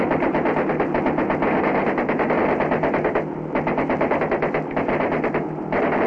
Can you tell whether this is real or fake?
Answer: real